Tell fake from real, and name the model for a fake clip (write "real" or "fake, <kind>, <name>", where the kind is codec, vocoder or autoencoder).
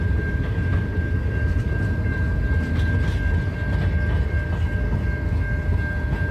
real